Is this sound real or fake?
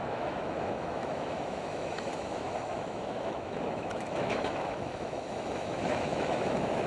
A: fake